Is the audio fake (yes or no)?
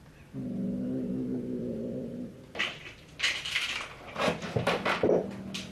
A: no